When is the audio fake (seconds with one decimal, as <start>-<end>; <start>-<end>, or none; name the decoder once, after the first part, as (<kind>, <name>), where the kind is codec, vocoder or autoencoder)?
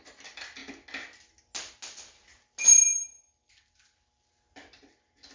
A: none